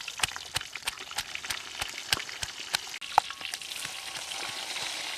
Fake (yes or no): no